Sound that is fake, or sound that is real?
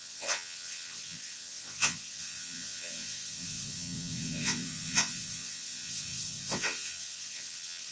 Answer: fake